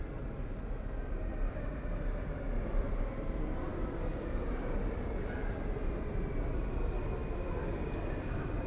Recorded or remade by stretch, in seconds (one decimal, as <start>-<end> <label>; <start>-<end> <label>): 0.0-8.7 recorded